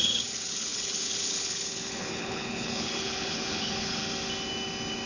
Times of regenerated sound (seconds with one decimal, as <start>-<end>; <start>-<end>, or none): 0.0-4.0